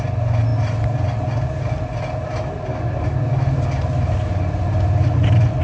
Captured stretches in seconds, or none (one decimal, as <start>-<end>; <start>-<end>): 0.0-5.6